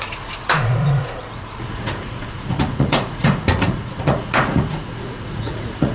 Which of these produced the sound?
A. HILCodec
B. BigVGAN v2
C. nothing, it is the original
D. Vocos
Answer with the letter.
D